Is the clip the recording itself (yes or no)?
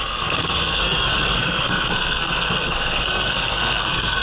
no